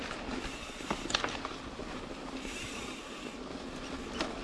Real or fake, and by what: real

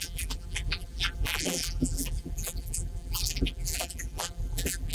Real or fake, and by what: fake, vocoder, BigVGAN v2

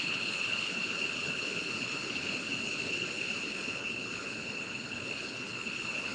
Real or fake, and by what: fake, codec, HILCodec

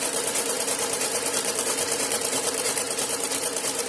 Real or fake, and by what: fake, vocoder, BigVGAN v2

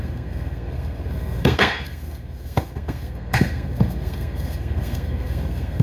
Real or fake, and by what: fake, codec, SNAC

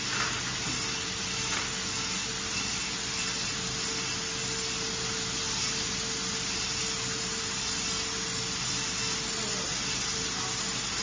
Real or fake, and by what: real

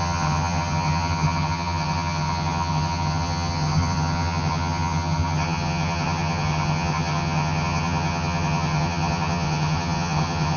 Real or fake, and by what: fake, vocoder, HiFi-GAN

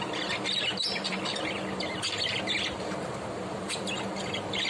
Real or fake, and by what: real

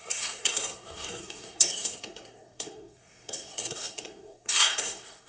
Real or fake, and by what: fake, codec, SNAC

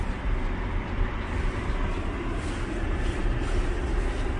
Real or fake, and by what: real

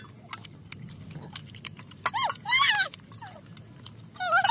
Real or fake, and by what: real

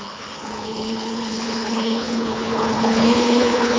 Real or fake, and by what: fake, codec, HILCodec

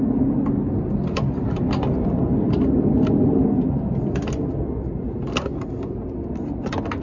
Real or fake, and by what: real